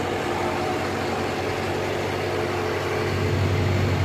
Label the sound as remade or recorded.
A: recorded